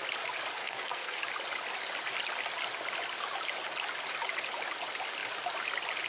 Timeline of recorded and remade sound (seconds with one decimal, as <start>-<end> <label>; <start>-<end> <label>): 0.0-0.6 recorded; 0.6-1.2 remade; 1.2-6.1 recorded